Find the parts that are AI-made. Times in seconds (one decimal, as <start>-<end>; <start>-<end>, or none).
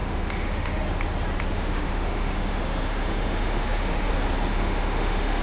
0.0-0.8; 1.5-4.1; 4.5-5.4